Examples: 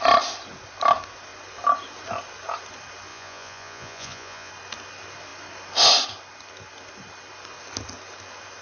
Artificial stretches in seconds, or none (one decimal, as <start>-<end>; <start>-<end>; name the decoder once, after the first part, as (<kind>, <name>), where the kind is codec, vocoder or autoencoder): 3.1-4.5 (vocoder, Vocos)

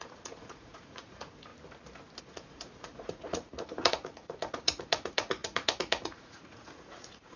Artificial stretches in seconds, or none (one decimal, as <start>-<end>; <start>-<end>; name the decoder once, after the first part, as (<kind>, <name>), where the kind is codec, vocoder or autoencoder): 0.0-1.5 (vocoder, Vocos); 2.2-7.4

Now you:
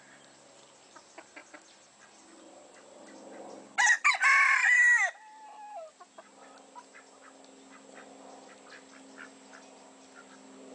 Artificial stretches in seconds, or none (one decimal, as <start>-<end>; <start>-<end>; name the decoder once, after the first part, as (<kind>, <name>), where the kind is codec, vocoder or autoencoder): none